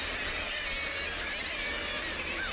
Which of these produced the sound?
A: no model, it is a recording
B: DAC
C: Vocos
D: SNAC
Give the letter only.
A